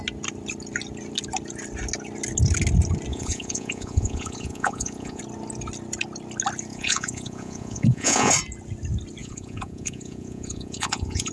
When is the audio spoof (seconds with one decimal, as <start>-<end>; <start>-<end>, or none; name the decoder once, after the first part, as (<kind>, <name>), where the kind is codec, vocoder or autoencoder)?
3.1-5.2 (vocoder, Vocos); 6.7-8.3; 9.2-11.3